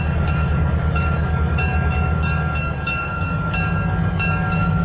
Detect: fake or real fake